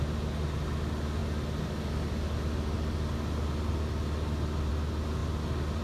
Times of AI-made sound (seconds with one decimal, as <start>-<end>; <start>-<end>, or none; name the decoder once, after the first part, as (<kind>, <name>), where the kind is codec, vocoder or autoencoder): none